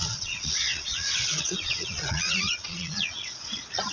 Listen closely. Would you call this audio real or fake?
fake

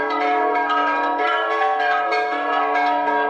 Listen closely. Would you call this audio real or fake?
fake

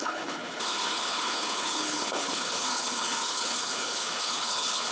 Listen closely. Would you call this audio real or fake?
fake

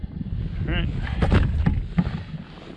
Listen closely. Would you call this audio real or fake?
real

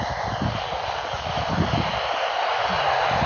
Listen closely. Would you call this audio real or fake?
real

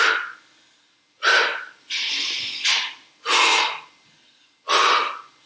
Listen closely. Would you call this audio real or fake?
real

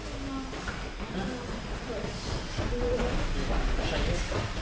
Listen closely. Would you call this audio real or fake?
real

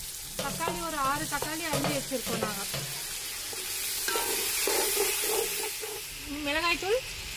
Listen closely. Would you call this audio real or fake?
real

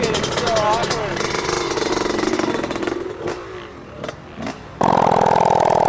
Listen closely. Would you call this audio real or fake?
real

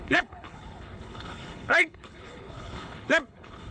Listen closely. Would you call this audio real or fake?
fake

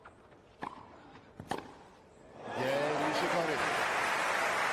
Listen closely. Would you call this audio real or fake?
real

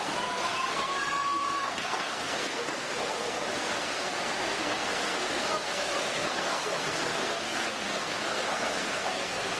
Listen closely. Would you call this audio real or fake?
fake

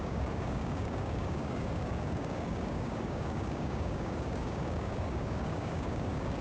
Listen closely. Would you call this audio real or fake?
fake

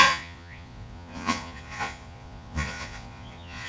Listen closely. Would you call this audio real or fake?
fake